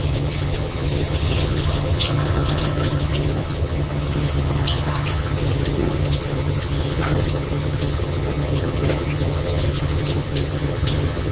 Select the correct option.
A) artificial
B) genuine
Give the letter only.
A